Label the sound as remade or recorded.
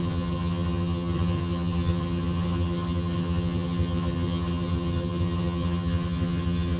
remade